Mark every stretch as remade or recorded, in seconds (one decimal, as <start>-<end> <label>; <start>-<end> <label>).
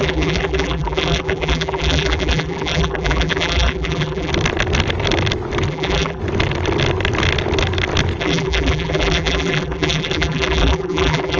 0.0-4.3 remade; 4.3-5.7 recorded; 5.7-6.2 remade; 6.2-8.2 recorded; 8.2-11.4 remade